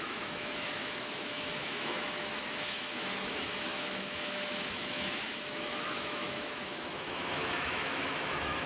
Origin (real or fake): fake